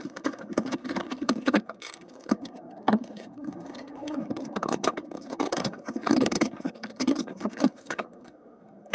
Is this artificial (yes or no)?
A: yes